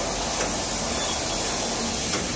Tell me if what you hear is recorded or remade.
recorded